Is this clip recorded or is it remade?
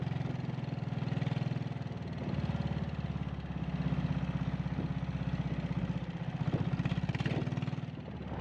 recorded